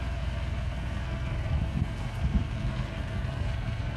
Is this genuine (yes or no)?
no